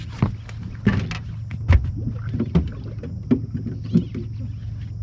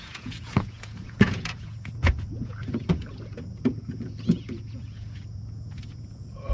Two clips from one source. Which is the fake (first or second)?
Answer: second